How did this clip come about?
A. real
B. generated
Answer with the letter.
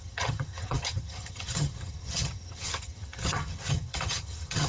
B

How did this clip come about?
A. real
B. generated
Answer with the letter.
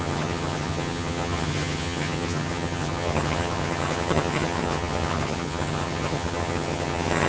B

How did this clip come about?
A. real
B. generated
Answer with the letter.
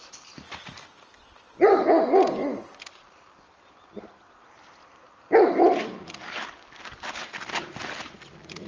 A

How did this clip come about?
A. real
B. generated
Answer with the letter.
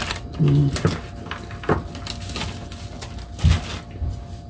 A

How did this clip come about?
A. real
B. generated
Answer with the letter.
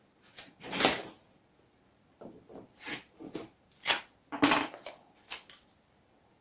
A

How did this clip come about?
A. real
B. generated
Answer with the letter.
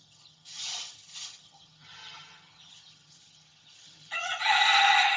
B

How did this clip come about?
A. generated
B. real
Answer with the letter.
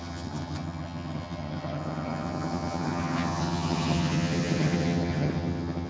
A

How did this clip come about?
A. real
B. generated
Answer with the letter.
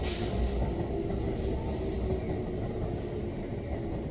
A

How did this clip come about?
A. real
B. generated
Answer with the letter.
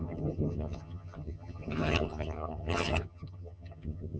B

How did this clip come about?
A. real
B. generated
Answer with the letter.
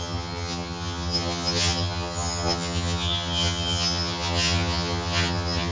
B